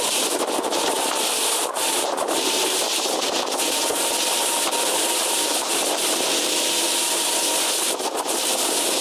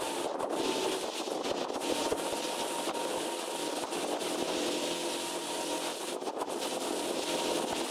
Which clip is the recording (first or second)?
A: second